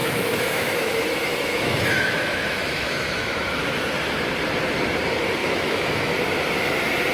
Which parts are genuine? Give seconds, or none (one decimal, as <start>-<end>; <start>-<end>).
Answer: 3.6-5.4; 6.1-7.1